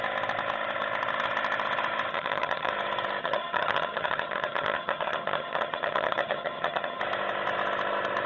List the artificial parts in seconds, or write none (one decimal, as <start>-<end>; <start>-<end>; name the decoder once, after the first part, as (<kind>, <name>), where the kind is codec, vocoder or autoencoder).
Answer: 2.1-2.7 (vocoder, HiFi-GAN); 3.2-7.0